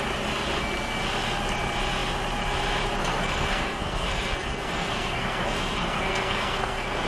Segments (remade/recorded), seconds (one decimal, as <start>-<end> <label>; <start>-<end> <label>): 0.0-3.0 recorded; 3.0-7.1 remade